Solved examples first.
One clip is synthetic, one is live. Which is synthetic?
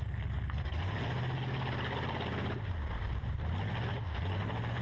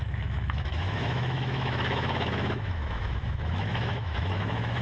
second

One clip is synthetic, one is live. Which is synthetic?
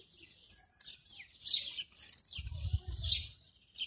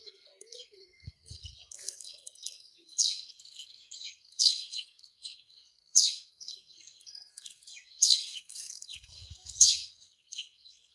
second